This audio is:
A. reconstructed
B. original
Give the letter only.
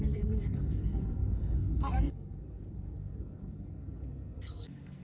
A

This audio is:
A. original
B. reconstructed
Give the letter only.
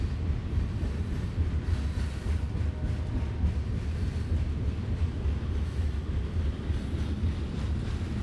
A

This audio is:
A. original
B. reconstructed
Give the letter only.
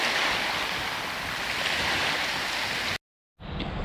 A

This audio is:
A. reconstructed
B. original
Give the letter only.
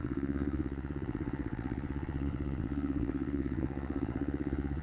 A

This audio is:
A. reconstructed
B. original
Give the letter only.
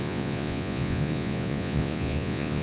A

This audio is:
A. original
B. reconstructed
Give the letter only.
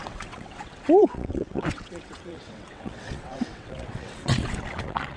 B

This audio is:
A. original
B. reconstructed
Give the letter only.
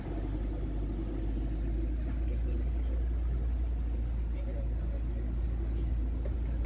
A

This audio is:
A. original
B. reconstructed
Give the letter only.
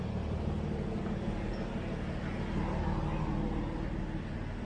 A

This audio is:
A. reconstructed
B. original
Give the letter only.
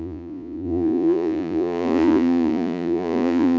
A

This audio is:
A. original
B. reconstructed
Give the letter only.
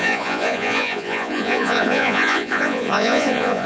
B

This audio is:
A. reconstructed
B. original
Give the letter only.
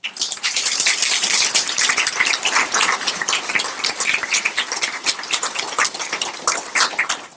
A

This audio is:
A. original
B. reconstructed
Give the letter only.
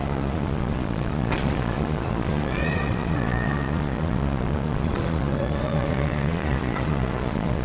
B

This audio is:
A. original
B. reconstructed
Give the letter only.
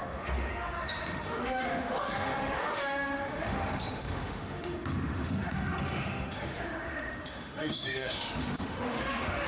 B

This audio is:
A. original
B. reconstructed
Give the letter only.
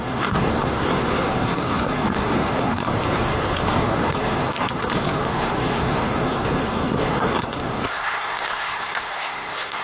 B